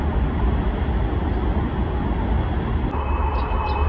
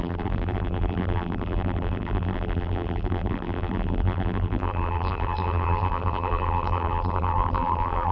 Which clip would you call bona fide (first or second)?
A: first